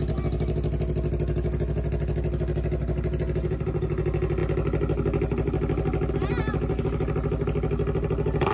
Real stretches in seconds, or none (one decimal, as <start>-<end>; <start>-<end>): 0.0-8.5